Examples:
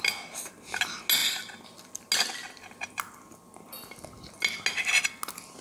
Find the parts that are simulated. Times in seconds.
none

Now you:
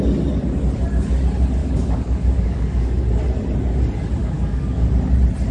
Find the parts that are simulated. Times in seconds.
1.6-2.9; 4.2-4.9